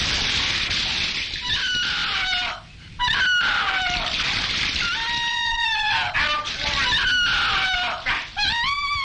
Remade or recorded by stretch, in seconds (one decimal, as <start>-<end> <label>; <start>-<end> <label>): 0.0-5.3 recorded; 5.3-6.0 remade; 6.0-9.0 recorded

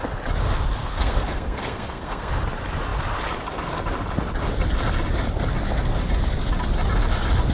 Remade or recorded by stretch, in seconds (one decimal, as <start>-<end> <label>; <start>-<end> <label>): 0.0-0.8 recorded; 0.8-2.3 remade; 2.3-7.5 recorded

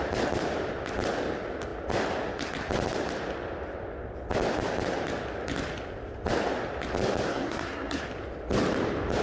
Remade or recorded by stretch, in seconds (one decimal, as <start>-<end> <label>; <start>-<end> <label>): 0.0-7.3 recorded; 7.3-8.0 remade; 8.0-9.2 recorded

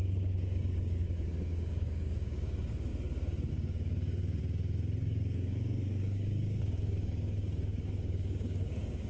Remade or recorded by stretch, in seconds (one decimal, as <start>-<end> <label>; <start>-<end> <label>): 0.0-2.9 remade; 2.9-3.5 recorded; 3.5-4.4 remade; 4.4-5.0 recorded; 5.0-9.1 remade